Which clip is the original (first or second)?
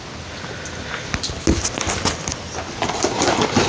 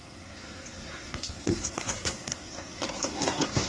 first